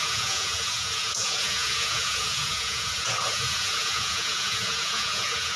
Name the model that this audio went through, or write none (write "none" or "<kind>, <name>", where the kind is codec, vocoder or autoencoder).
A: vocoder, Vocos